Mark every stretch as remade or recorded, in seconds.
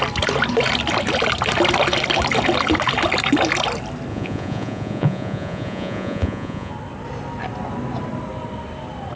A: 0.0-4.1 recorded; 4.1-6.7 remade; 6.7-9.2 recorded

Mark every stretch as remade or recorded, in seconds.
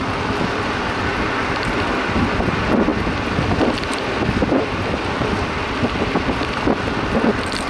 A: 0.0-1.1 remade; 1.1-2.0 recorded; 2.0-7.7 remade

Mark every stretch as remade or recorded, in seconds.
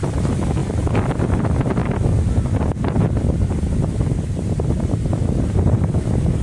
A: 0.0-6.4 recorded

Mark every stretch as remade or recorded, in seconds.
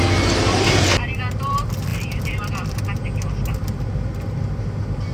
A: 0.0-1.9 recorded; 1.9-2.4 remade; 2.4-5.1 recorded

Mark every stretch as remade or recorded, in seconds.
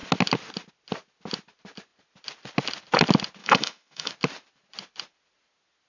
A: 0.0-3.4 recorded; 3.4-4.1 remade; 4.1-5.9 recorded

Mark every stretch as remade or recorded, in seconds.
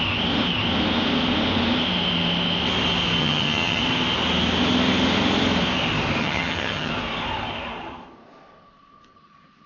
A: 0.0-3.2 recorded; 3.2-3.8 remade; 3.8-6.2 recorded; 6.2-6.9 remade; 6.9-9.7 recorded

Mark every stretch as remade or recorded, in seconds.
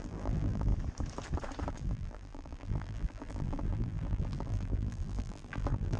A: 0.0-0.7 remade; 0.7-1.7 recorded; 1.7-6.0 remade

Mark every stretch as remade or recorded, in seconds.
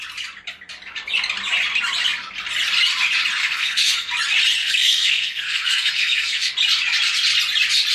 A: 0.0-3.4 recorded; 3.4-4.1 remade; 4.1-4.6 recorded; 4.6-6.5 remade; 6.5-7.9 recorded